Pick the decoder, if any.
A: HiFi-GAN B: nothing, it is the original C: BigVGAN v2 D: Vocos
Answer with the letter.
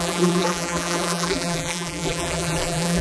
C